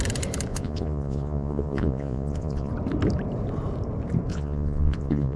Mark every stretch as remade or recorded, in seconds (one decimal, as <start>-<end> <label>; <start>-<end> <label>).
0.0-0.5 recorded; 0.5-2.7 remade; 2.7-4.3 recorded; 4.3-5.4 remade